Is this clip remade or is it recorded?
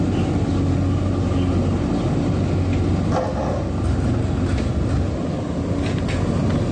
recorded